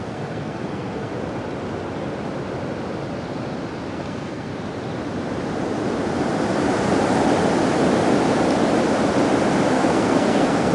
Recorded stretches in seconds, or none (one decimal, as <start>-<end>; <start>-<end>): 1.1-3.9; 4.5-9.7